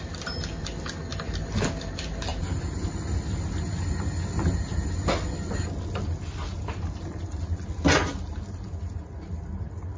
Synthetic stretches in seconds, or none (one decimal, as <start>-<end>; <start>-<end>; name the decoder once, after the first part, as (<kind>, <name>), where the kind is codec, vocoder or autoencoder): none